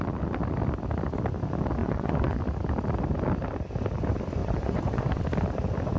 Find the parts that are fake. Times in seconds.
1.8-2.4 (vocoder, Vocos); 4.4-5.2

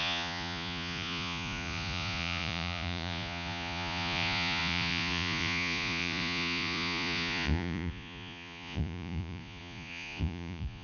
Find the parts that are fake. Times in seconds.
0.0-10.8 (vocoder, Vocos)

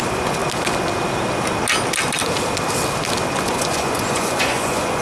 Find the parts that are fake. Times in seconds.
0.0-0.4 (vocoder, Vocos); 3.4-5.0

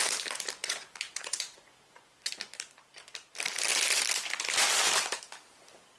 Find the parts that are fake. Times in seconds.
0.6-2.3 (vocoder, Vocos)